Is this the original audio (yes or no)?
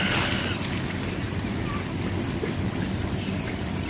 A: no